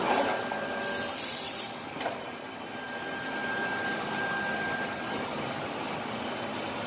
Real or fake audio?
real